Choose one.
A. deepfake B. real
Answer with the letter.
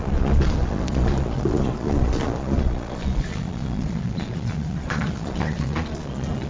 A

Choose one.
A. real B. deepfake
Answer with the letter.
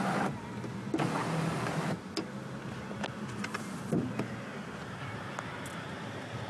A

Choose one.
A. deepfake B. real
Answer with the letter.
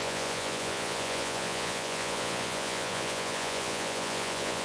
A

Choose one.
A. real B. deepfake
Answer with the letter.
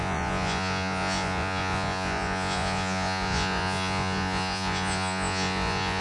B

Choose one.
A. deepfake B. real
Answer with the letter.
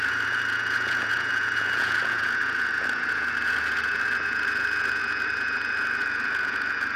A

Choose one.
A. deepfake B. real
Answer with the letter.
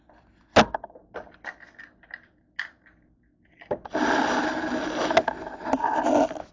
B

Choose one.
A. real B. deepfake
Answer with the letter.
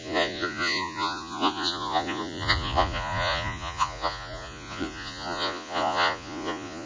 B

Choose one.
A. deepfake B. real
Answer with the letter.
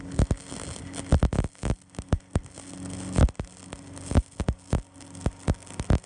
B